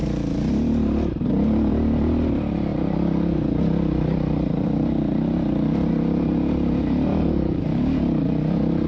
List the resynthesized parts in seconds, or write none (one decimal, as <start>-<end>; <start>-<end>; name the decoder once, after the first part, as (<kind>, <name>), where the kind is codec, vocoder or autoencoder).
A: 7.1-8.0 (codec, DAC)